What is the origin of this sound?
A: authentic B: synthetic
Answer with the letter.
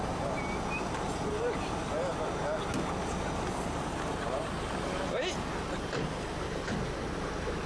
A